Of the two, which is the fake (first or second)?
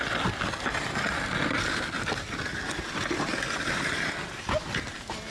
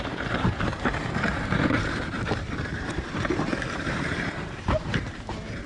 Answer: second